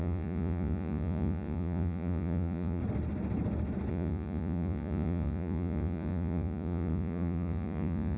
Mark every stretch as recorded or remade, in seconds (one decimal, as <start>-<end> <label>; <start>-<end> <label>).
0.0-2.8 remade; 2.8-3.9 recorded; 3.9-8.2 remade